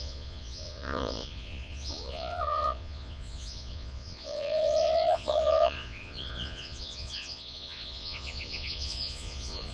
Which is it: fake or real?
fake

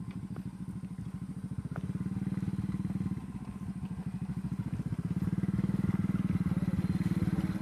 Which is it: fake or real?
real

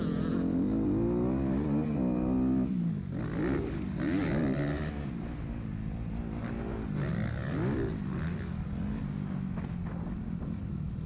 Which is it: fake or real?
real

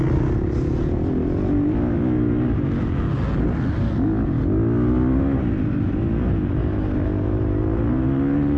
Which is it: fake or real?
real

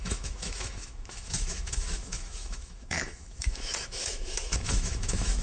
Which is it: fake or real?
fake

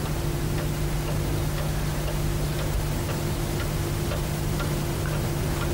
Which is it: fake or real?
real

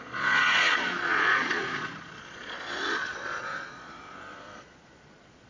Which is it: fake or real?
fake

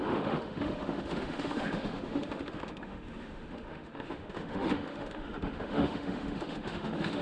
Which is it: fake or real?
fake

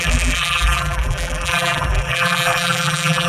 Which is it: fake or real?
fake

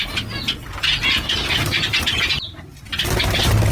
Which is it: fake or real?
real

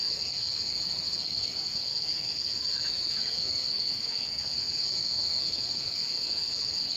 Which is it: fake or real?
fake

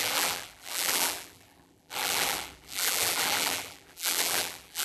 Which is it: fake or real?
fake